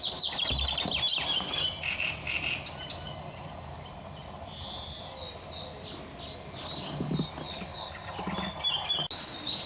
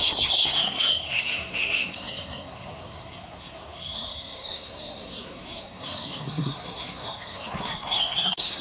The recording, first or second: first